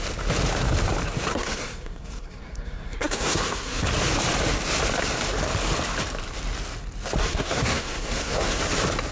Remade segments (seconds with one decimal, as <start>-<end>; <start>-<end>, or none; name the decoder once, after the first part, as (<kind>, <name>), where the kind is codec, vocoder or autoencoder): 1.3-3.8 (codec, SNAC); 7.2-8.6